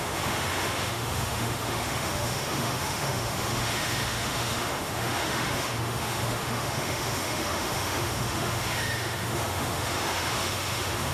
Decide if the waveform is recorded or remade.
remade